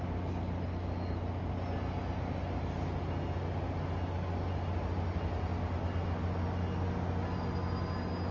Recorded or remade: recorded